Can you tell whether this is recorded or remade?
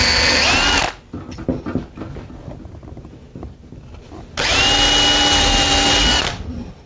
recorded